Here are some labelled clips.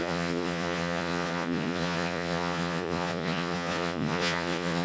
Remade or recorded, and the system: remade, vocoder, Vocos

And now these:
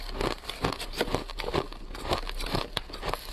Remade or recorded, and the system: recorded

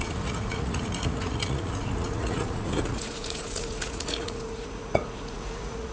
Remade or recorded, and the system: remade, vocoder, Vocos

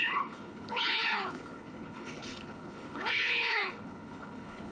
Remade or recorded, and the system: remade, codec, HILCodec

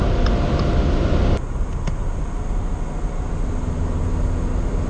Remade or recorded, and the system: recorded